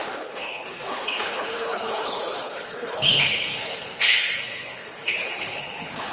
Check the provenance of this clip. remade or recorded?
remade